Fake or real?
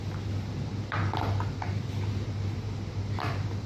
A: real